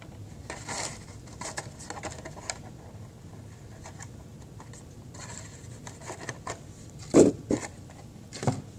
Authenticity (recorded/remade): recorded